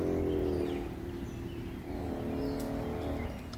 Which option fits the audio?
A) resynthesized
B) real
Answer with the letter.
B